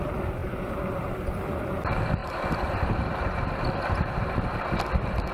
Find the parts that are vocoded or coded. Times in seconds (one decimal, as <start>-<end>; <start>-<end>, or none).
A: 0.4-1.1; 2.2-5.3